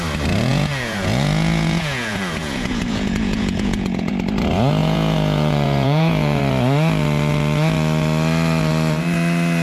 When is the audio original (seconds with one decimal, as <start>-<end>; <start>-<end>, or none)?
0.0-0.5; 4.1-4.8; 6.4-9.6